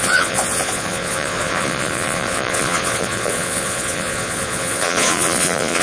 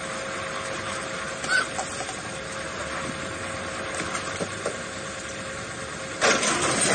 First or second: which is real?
second